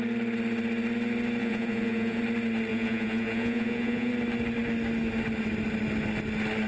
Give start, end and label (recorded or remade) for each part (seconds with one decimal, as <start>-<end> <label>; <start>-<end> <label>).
0.0-1.4 recorded; 1.4-2.2 remade; 2.2-2.7 recorded; 2.7-4.1 remade; 4.1-6.7 recorded